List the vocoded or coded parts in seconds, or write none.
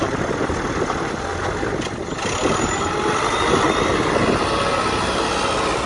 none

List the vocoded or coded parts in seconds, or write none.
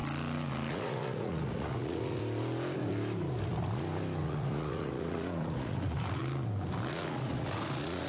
0.7-2.2 (vocoder, Vocos); 4.2-6.2; 6.9-8.1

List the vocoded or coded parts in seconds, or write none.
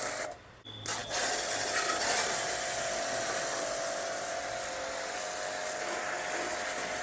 none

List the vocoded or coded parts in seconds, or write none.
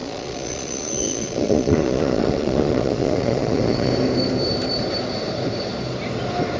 0.0-3.9 (vocoder, Vocos)